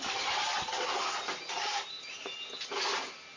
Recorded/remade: recorded